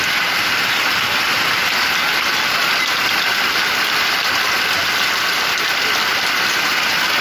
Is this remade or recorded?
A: recorded